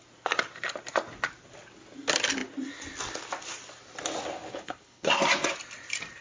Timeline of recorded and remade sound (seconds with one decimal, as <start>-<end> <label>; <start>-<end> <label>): 0.0-4.5 recorded; 4.5-5.1 remade; 5.1-6.2 recorded